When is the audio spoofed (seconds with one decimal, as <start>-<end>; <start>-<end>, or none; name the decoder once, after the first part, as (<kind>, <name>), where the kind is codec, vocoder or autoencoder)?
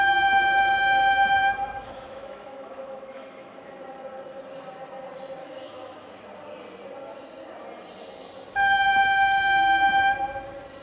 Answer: 1.4-3.7 (autoencoder, DAC-VAE); 5.4-6.1